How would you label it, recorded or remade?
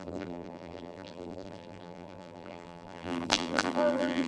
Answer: remade